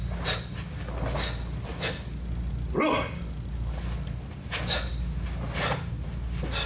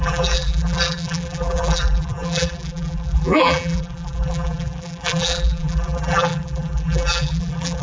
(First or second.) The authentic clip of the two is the first